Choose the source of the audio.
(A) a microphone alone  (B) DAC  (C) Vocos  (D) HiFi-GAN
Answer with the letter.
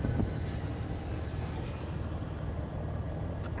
A